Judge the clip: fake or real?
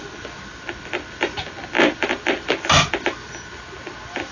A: real